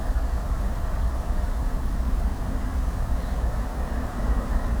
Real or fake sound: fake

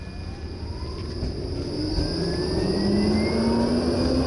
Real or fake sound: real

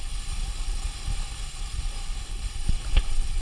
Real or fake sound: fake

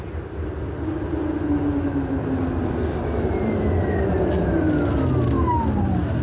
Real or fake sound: real